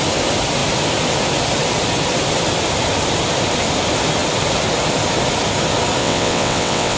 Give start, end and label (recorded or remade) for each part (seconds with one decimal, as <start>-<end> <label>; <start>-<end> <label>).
0.0-6.0 recorded; 6.0-7.0 remade

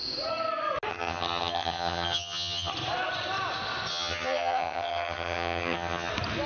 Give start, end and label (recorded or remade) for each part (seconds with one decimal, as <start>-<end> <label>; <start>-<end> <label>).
0.0-0.9 recorded; 0.9-2.7 remade; 2.7-3.9 recorded; 3.9-6.1 remade; 6.1-6.5 recorded